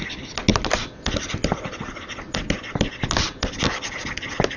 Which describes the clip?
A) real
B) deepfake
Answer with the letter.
A